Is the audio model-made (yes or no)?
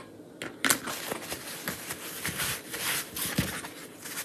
no